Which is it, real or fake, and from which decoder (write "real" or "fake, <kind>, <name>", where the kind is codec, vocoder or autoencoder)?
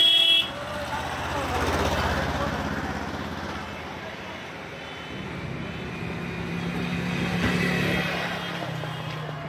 real